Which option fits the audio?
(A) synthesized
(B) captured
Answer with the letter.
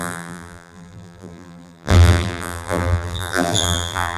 A